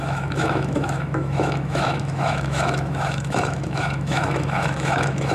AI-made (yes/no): yes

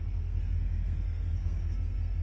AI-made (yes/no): yes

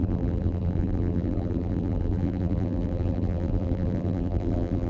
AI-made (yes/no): yes